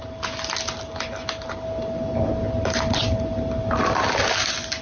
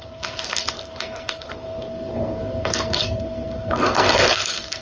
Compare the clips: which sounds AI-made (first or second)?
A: second